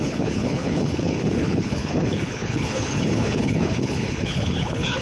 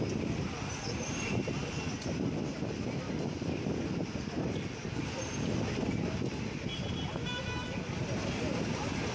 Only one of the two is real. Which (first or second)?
second